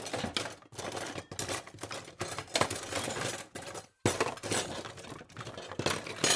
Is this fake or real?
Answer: real